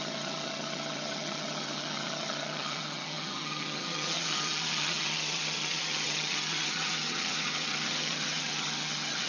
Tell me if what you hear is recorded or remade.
remade